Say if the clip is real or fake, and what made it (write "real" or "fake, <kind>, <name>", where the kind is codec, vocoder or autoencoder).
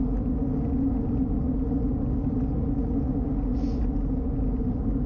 real